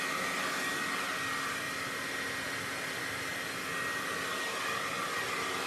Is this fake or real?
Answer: real